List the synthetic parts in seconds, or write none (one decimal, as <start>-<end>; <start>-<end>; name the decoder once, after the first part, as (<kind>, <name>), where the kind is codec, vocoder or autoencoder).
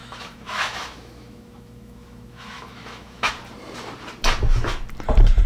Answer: 0.0-3.3 (autoencoder, DAC-VAE)